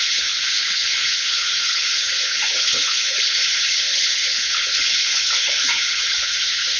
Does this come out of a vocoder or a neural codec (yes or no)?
yes